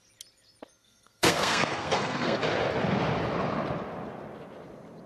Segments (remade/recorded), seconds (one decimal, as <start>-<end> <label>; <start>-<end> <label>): 0.0-0.8 recorded; 0.8-2.4 remade; 2.4-5.1 recorded